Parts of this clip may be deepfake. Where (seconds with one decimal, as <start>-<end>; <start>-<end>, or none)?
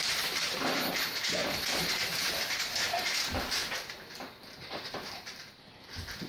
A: 0.0-3.6; 4.6-6.3